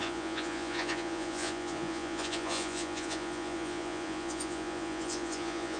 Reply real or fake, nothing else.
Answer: fake